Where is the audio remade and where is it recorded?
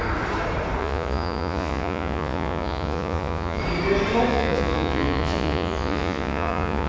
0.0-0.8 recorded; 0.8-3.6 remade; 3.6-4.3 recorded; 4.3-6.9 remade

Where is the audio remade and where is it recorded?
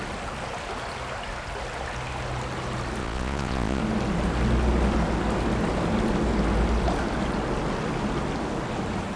0.0-3.0 recorded; 3.0-3.8 remade; 3.8-9.2 recorded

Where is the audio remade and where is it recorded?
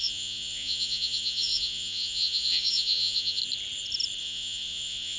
0.0-3.4 remade; 3.4-4.2 recorded; 4.2-5.2 remade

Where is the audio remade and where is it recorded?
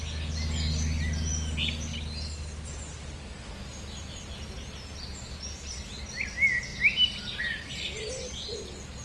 0.0-9.0 recorded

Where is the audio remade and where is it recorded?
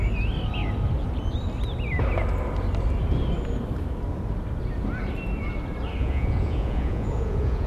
0.0-6.0 recorded; 6.0-7.7 remade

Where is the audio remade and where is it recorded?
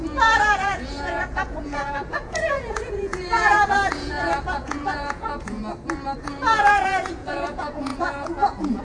0.0-5.6 remade; 5.6-6.2 recorded; 6.2-8.8 remade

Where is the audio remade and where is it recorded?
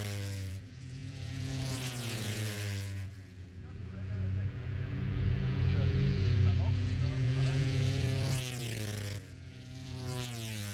0.0-10.7 remade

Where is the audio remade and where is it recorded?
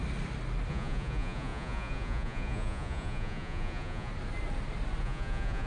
0.0-0.7 recorded; 0.7-4.1 remade; 4.1-5.0 recorded; 5.0-5.7 remade